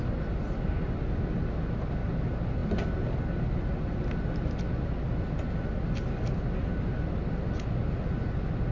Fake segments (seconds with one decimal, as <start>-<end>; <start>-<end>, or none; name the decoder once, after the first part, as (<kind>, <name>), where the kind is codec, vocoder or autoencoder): none